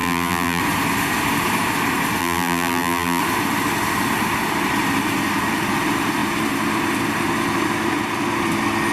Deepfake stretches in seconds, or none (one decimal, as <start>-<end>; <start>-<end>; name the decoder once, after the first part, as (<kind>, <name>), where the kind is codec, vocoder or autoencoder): 0.0-0.6 (vocoder, BigVGAN v2); 2.2-3.2